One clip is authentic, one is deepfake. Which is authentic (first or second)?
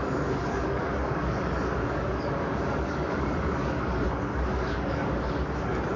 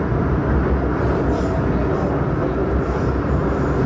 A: second